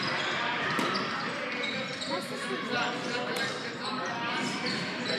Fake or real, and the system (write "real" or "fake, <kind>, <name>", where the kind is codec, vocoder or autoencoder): real